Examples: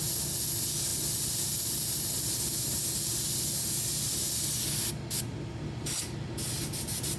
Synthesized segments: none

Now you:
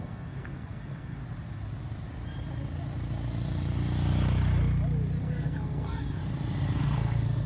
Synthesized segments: 0.0-1.2 (codec, SNAC); 5.2-6.2; 6.8-7.5

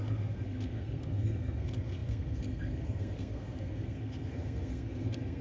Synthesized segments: 0.0-5.4 (codec, SNAC)

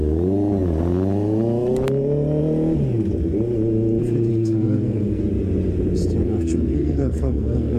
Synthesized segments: 4.3-5.2 (codec, SNAC); 6.2-7.8

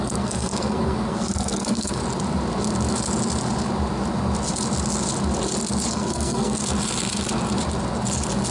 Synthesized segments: 0.0-2.0 (codec, SNAC); 5.9-6.6

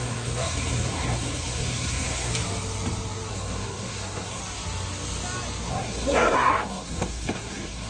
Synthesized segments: 0.0-2.3 (codec, SNAC); 3.3-4.4; 5.7-7.9